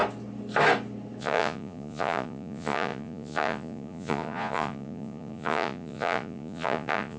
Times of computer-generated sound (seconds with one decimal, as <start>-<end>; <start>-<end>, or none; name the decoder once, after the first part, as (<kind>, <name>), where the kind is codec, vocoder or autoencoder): 1.2-7.2 (vocoder, Vocos)